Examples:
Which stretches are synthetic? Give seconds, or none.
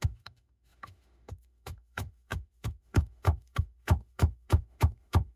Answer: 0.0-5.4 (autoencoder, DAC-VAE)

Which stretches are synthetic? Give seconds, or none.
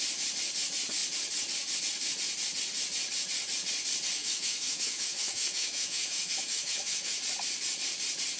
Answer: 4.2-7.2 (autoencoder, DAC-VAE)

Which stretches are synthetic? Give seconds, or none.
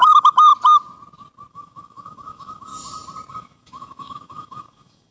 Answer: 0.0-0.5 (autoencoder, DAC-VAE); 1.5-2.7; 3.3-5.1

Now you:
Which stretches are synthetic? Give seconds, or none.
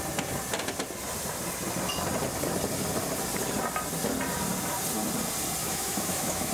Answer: 5.6-6.5 (autoencoder, DAC-VAE)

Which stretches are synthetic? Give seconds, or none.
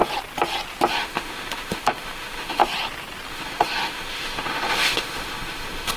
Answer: 0.9-2.6 (autoencoder, DAC-VAE); 3.3-6.0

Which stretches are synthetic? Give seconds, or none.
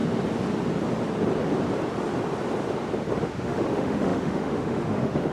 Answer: 3.2-5.3 (autoencoder, DAC-VAE)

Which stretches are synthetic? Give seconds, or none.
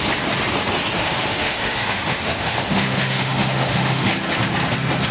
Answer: 1.0-4.1 (autoencoder, DAC-VAE)